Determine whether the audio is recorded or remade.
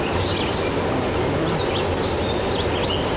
recorded